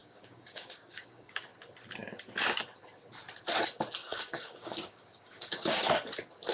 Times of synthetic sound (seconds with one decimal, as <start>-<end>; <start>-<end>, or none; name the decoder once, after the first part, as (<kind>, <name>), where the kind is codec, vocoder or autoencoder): 0.0-1.5 (codec, DAC); 4.0-5.8